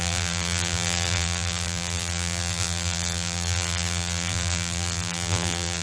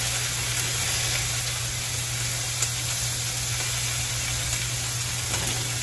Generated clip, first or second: first